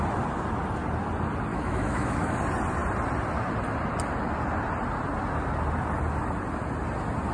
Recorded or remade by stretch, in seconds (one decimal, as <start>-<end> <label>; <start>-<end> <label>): 0.0-1.5 recorded; 1.5-2.4 remade; 2.4-7.3 recorded